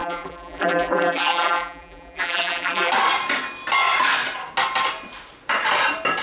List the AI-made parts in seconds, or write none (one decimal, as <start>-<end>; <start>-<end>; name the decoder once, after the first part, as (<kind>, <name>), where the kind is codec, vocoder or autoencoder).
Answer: 0.0-2.9 (vocoder, BigVGAN v2)